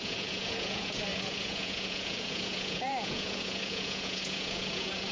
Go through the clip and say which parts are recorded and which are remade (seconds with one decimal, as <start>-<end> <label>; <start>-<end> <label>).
0.0-5.1 remade